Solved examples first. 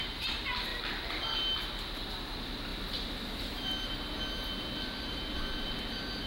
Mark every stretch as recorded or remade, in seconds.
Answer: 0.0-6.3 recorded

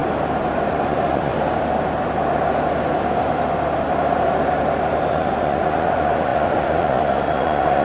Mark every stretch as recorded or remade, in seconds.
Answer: 0.0-0.7 recorded; 0.7-1.3 remade; 1.3-5.1 recorded; 5.1-7.8 remade

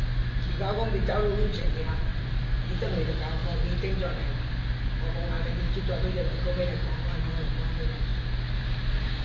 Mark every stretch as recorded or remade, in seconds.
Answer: 0.0-1.5 recorded; 1.5-2.2 remade; 2.2-9.2 recorded

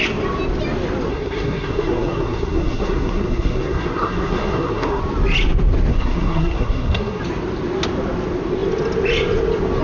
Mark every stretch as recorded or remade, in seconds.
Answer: 0.0-1.1 recorded; 1.1-5.0 remade; 5.0-5.9 recorded; 5.9-7.2 remade; 7.2-9.8 recorded

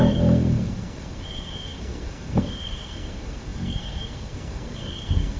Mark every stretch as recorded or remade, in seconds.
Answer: 0.0-5.4 remade

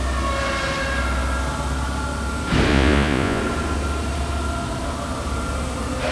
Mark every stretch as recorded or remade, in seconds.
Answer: 0.0-2.7 recorded; 2.7-3.4 remade; 3.4-6.1 recorded

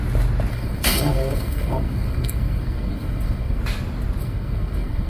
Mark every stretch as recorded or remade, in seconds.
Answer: 0.0-0.5 recorded; 0.5-3.6 remade; 3.6-4.2 recorded; 4.2-5.1 remade

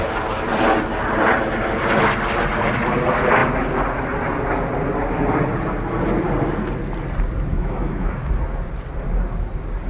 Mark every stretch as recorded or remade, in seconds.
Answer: 0.0-7.5 recorded; 7.5-8.3 remade; 8.3-9.9 recorded